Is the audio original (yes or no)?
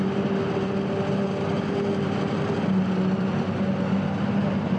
yes